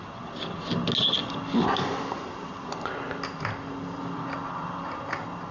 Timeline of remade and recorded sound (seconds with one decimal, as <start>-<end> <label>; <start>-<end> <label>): 0.0-5.5 recorded